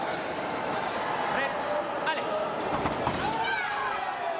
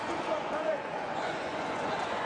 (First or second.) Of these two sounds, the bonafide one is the first